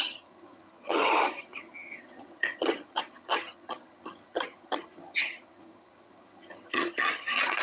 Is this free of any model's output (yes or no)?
no